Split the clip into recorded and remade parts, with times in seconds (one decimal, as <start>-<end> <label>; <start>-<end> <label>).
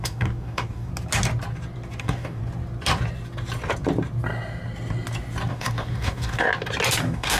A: 0.0-0.9 remade; 0.9-2.0 recorded; 2.0-2.4 remade; 2.4-5.5 recorded; 5.5-6.5 remade; 6.5-7.0 recorded; 7.0-7.4 remade